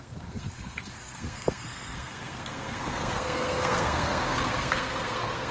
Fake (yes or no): yes